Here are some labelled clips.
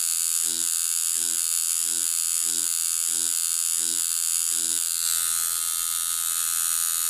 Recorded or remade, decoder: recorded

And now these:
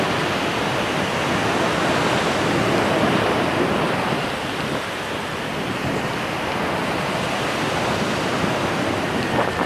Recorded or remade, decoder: recorded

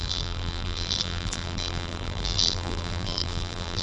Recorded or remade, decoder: remade, vocoder, BigVGAN v2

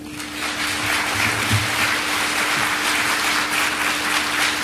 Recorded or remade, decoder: recorded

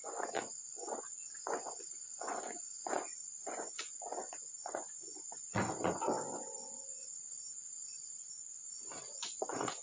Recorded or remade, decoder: remade, vocoder, Vocos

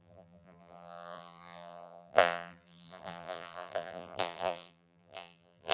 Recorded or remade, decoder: remade, vocoder, BigVGAN v2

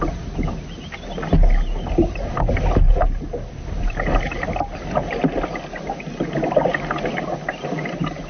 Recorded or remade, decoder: recorded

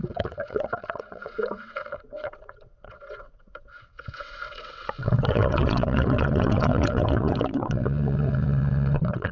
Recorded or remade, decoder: remade, vocoder, WaveNeXt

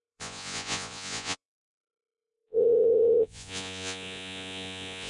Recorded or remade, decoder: remade, vocoder, Vocos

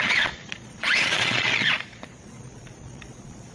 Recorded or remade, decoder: remade, vocoder, Vocos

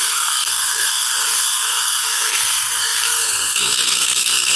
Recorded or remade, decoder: remade, codec, SNAC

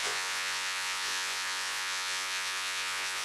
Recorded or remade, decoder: remade, vocoder, Vocos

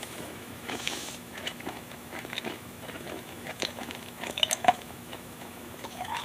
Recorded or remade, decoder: remade, autoencoder, DAC-VAE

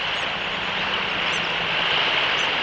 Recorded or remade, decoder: recorded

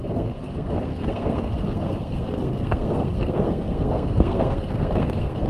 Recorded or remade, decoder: remade, codec, SNAC